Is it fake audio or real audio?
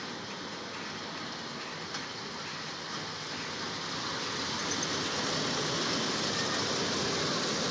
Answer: real